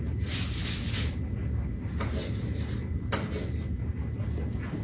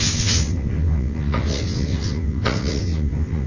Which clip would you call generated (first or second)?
second